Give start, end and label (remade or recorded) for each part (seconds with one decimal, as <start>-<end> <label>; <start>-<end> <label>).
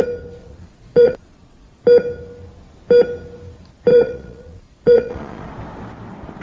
0.0-0.4 recorded; 0.4-1.8 remade; 1.8-3.9 recorded; 3.9-5.5 remade; 5.5-6.4 recorded